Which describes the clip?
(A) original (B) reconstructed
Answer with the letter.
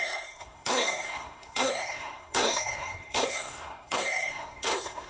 B